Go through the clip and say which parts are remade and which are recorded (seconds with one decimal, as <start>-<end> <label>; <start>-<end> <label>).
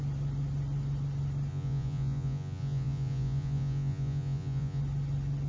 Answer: 0.0-1.5 recorded; 1.5-4.8 remade; 4.8-5.5 recorded